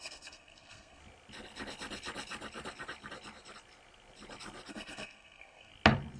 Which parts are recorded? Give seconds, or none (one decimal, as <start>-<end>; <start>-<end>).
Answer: 1.0-4.7; 5.7-6.2